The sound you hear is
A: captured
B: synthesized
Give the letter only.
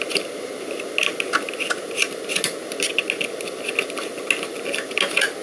A